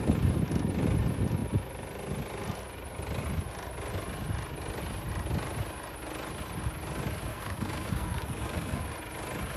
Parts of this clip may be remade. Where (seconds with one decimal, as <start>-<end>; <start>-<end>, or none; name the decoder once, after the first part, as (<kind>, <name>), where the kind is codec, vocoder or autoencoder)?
7.3-8.8 (codec, SNAC)